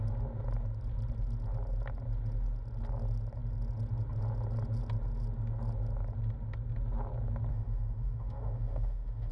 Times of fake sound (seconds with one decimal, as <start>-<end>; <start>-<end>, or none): 7.5-9.3